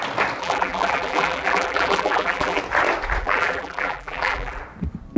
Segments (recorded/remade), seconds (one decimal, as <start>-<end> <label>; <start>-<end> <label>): 0.0-0.4 recorded; 0.4-2.6 remade; 2.6-3.2 recorded; 3.2-4.6 remade; 4.6-5.2 recorded